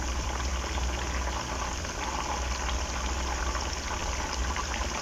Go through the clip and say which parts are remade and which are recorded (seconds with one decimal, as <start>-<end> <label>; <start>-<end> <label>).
0.0-0.5 remade; 0.5-3.4 recorded; 3.4-4.0 remade; 4.0-4.5 recorded; 4.5-5.0 remade